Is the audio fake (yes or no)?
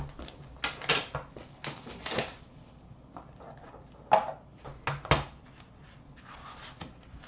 no